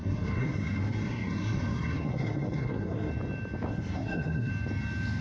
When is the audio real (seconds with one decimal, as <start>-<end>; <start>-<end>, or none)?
3.1-3.7; 4.5-5.2